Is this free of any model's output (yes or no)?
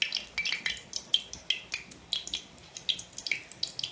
yes